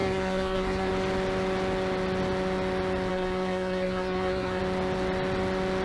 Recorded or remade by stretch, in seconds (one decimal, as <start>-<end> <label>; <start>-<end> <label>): 0.0-0.9 remade; 0.9-3.1 recorded; 3.1-4.6 remade; 4.6-5.8 recorded